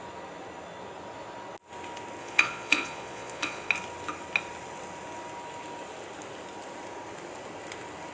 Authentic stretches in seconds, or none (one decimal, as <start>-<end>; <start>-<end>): 0.0-2.2; 3.7-8.1

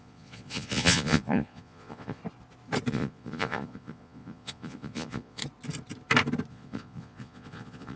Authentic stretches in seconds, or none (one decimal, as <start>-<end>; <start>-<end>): 2.2-2.9; 5.4-6.5

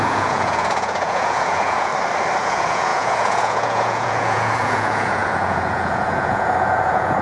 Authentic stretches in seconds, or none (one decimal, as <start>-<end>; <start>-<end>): 1.9-2.4